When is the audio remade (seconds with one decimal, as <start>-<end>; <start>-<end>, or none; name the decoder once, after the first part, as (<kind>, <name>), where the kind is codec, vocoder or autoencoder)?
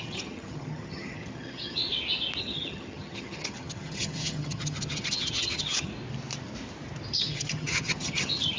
0.0-1.8 (vocoder, HiFi-GAN); 2.4-5.9; 7.2-8.6